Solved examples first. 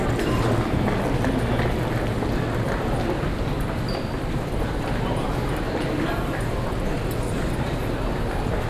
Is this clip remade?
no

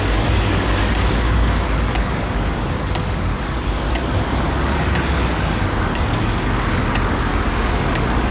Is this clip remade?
yes